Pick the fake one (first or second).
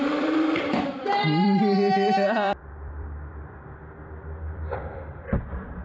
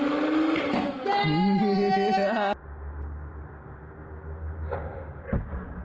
first